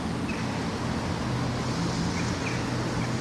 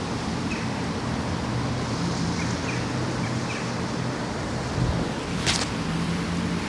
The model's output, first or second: second